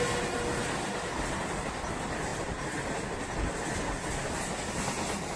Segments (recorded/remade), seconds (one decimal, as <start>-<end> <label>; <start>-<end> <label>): 0.0-5.4 recorded